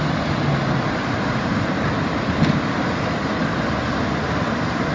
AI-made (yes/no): no